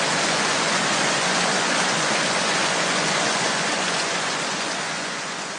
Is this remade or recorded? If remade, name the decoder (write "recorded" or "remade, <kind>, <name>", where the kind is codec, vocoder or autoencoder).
remade, vocoder, Vocos